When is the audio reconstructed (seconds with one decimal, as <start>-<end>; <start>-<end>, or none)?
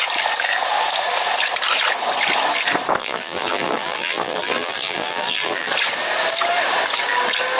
3.0-5.7